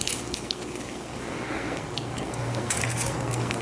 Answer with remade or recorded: remade